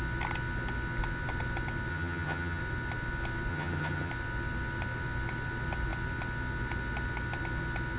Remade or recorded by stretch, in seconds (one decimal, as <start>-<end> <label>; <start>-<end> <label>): 0.0-1.9 recorded; 1.9-2.6 remade; 2.6-3.5 recorded; 3.5-4.1 remade; 4.1-8.0 recorded